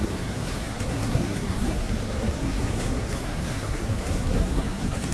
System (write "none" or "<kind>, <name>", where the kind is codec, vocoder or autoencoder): codec, SNAC